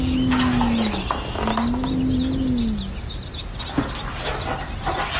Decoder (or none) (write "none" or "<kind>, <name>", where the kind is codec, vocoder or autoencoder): none